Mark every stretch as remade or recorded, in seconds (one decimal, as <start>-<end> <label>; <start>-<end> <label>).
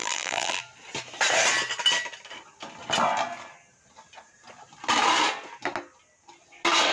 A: 0.0-0.6 remade; 0.6-6.9 recorded